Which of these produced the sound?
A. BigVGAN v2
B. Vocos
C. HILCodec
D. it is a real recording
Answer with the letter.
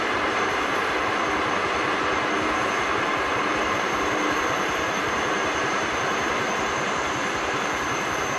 A